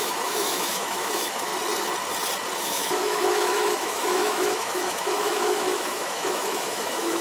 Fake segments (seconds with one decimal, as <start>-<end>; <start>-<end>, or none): 0.0-1.5; 2.6-7.2